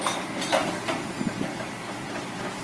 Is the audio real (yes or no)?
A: yes